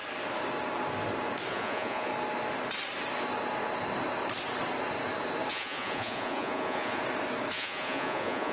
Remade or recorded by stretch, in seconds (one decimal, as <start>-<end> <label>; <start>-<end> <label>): 0.0-1.5 recorded; 1.5-2.1 remade; 2.1-5.5 recorded; 5.5-7.0 remade; 7.0-7.5 recorded; 7.5-8.5 remade